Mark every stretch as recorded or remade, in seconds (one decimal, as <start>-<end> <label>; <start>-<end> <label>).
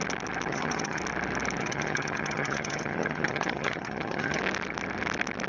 0.0-0.5 recorded; 0.5-1.0 remade; 1.0-1.6 recorded; 1.6-4.4 remade; 4.4-5.5 recorded